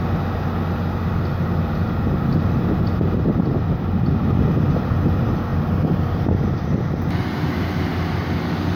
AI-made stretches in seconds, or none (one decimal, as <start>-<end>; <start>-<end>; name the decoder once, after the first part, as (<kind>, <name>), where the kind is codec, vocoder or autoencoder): none